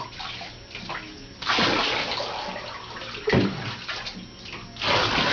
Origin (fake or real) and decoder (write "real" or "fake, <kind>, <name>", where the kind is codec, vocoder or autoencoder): real